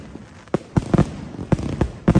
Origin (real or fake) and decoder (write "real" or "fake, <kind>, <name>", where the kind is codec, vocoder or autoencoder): real